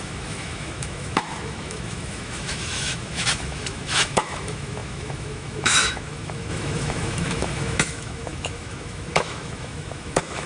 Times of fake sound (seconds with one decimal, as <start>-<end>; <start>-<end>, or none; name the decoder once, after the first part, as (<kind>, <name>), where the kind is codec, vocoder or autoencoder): 0.0-10.5 (autoencoder, DAC-VAE)